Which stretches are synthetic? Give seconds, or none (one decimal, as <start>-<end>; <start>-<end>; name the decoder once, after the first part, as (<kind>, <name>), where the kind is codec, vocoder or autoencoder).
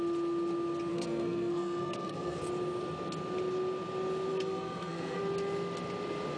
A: 0.9-2.4 (codec, SNAC); 4.3-5.2